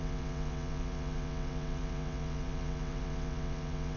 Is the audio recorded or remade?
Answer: remade